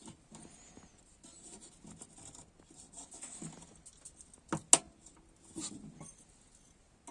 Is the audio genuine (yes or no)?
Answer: yes